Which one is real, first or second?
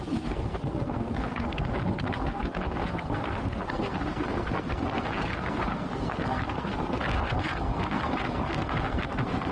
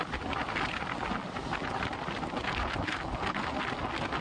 second